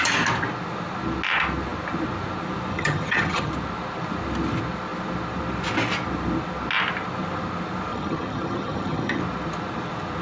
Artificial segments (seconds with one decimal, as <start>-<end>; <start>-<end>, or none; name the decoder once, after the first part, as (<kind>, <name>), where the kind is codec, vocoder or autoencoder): 2.7-3.5 (vocoder, HiFi-GAN); 7.9-9.2